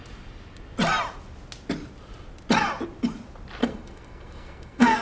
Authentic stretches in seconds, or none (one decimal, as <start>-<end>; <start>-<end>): 0.0-3.6

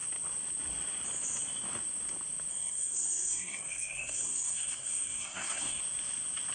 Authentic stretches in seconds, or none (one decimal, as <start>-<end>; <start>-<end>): 0.0-2.5; 5.8-6.5

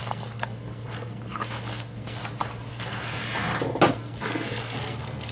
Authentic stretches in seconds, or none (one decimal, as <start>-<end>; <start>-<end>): 2.2-2.7; 3.2-3.9

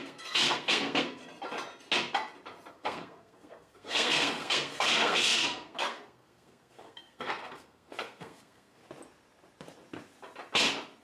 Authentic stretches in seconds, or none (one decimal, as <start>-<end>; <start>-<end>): 1.2-2.7; 8.8-11.0

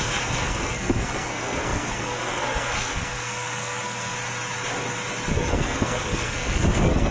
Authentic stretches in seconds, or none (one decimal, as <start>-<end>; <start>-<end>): 4.1-5.3

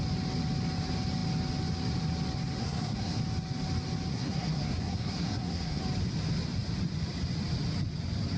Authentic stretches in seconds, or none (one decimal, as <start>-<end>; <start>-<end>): 0.0-2.6; 3.2-4.1; 5.8-8.4